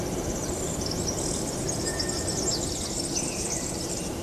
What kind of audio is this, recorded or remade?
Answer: recorded